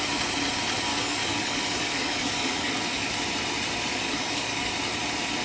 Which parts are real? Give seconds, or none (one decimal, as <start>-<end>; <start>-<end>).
0.0-0.9; 3.1-3.9; 4.7-5.4